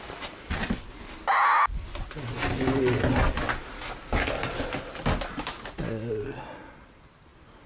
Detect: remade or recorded recorded